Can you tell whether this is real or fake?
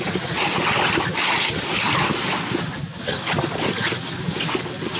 real